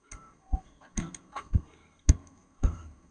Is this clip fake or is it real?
fake